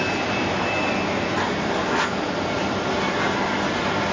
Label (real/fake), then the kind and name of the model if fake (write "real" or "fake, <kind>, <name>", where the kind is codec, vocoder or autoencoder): real